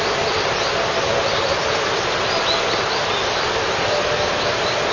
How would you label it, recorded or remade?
recorded